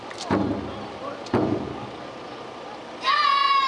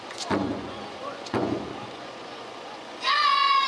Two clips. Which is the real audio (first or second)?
first